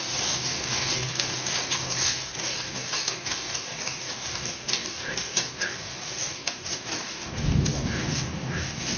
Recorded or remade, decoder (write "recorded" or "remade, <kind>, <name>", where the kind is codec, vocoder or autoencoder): remade, codec, DAC